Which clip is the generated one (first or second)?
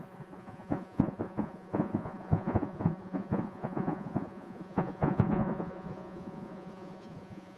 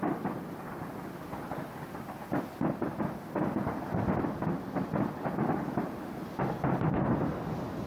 first